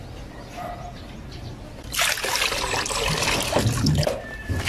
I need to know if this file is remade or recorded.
recorded